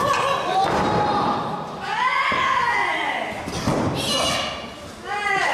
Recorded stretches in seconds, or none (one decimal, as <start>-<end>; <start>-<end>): 0.0-5.5

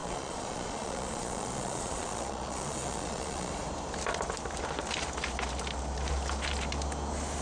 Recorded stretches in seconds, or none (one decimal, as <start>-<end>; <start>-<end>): 3.5-7.4